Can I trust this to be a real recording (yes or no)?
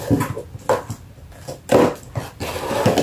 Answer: yes